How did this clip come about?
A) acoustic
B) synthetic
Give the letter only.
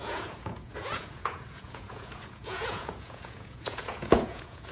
B